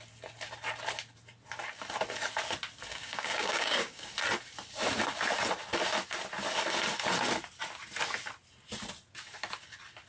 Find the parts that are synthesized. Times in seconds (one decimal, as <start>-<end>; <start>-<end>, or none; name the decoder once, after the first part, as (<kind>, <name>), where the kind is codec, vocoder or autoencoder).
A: 2.9-4.1 (codec, DAC)